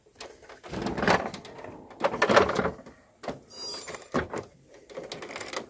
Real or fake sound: real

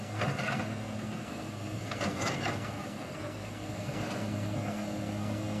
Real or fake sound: fake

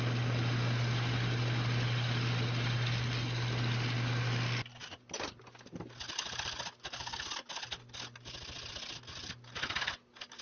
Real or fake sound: real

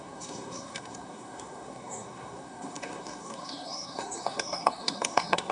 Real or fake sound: fake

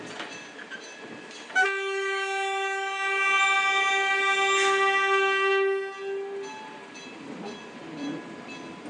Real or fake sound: real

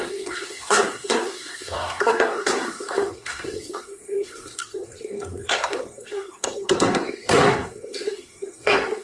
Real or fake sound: fake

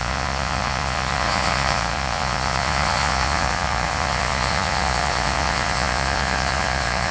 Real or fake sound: fake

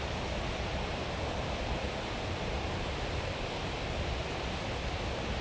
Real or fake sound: real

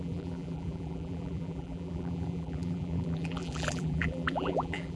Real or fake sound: fake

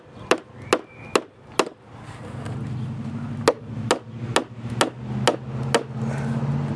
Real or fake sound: real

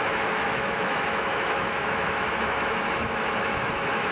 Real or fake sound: fake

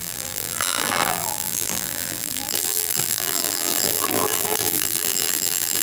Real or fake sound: fake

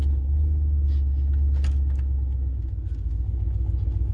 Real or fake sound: real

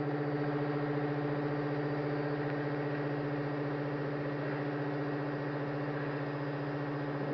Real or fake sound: real